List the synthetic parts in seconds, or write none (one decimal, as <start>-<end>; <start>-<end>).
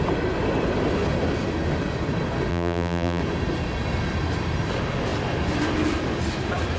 2.5-3.2